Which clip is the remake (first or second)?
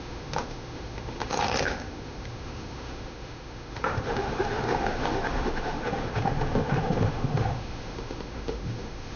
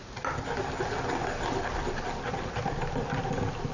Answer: first